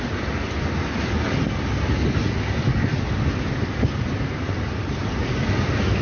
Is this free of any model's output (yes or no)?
yes